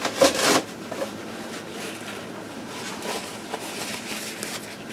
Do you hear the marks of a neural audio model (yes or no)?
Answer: no